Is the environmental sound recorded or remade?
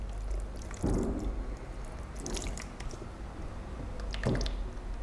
recorded